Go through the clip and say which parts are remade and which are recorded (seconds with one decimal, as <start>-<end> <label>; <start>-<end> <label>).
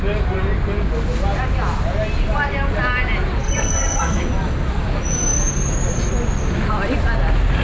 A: 0.0-3.4 recorded; 3.4-4.2 remade; 4.2-7.6 recorded